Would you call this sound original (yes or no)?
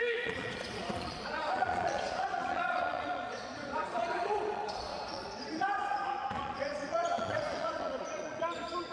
no